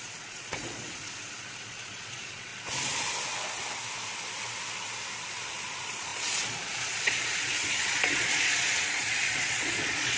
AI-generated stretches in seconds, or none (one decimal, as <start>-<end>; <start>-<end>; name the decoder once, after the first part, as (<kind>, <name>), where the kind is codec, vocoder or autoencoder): 0.0-2.5 (vocoder, Vocos); 5.3-10.2